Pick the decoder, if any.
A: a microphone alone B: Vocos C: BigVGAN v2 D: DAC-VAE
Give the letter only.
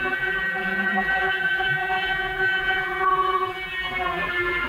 C